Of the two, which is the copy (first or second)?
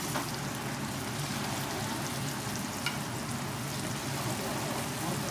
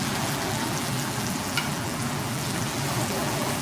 second